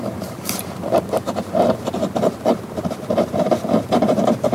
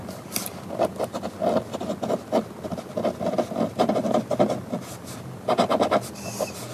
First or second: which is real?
second